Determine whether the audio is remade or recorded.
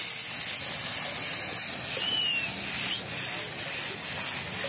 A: recorded